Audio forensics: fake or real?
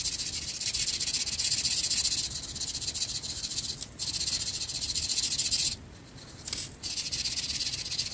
real